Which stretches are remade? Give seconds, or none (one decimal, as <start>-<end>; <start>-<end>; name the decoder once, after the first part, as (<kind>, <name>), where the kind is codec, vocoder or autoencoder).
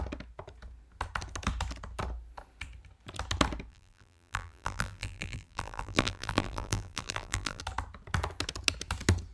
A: 3.7-7.6 (vocoder, BigVGAN v2)